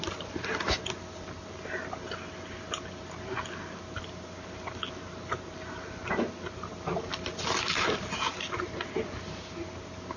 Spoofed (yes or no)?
no